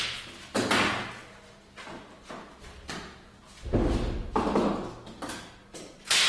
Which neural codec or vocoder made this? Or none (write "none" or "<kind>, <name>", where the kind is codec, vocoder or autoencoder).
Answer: none